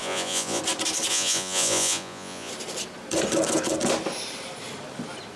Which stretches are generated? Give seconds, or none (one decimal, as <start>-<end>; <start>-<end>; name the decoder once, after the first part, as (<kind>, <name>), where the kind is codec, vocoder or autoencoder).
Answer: 0.0-0.6 (vocoder, Vocos); 1.1-2.5